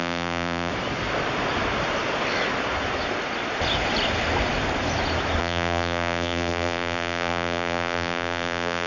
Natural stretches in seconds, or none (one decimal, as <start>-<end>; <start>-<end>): 0.7-5.4